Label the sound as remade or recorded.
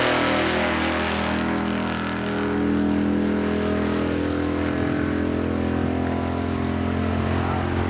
recorded